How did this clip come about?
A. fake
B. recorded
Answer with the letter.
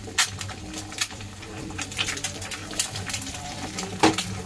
A